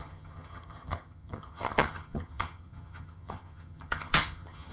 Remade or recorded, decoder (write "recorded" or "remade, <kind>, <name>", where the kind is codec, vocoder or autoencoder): remade, vocoder, HiFi-GAN